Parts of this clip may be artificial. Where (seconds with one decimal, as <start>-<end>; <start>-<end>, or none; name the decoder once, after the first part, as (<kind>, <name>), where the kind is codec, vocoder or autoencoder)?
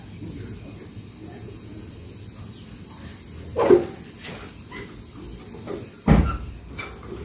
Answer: 1.2-1.9 (vocoder, Vocos)